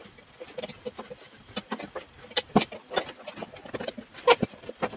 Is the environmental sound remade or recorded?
recorded